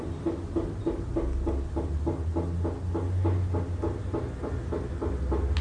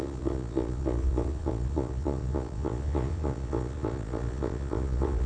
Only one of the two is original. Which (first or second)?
first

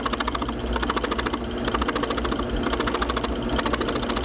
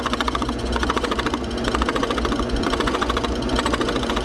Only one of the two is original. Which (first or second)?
first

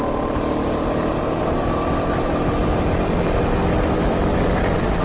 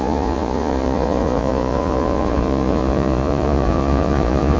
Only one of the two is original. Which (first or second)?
first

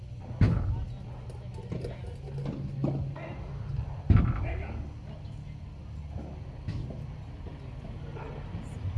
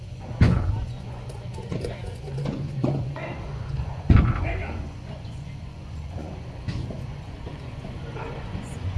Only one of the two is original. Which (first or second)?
first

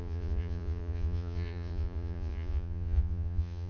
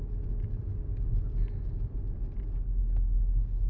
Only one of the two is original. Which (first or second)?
second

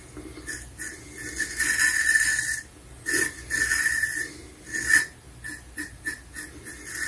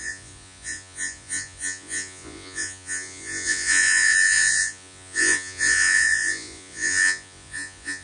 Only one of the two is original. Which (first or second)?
first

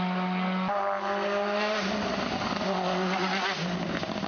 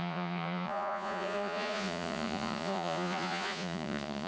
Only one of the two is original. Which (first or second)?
first